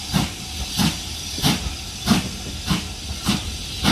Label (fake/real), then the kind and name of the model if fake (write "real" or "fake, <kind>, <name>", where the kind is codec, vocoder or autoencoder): real